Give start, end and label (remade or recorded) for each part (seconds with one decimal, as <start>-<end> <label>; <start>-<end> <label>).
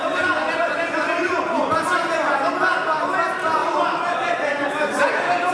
0.0-5.5 recorded